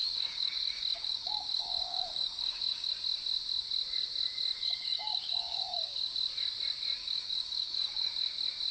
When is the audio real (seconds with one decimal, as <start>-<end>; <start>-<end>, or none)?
2.9-4.5; 6.1-7.0; 8.1-8.7